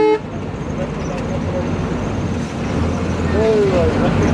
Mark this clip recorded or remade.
recorded